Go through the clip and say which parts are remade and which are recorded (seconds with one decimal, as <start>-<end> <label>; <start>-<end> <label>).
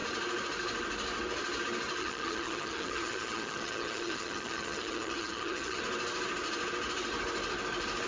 0.0-2.0 recorded; 2.0-5.8 remade; 5.8-8.1 recorded